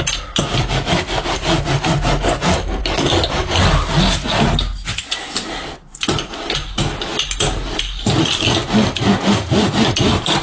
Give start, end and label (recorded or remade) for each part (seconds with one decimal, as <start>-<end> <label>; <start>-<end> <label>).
0.0-10.4 recorded